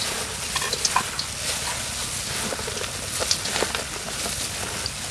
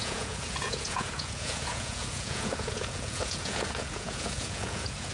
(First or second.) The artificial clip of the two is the second